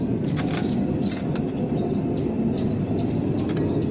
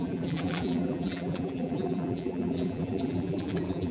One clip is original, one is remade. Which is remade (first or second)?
second